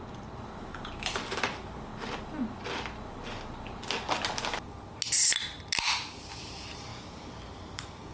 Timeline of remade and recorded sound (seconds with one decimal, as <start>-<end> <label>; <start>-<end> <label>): 0.0-0.6 recorded; 0.6-1.9 remade; 1.9-5.9 recorded; 5.9-8.1 remade